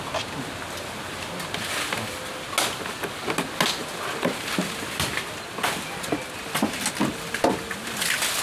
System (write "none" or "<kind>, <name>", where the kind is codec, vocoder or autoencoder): none